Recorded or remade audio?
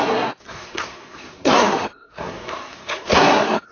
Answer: remade